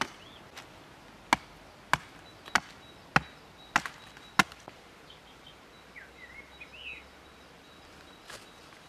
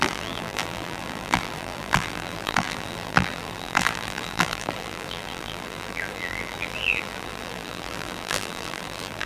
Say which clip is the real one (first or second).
first